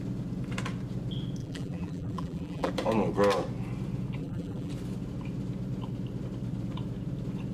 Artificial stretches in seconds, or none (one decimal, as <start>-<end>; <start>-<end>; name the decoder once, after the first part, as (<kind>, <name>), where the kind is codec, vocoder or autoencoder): 1.4-2.7 (vocoder, BigVGAN v2); 4.2-4.7